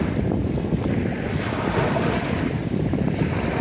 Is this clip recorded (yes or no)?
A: yes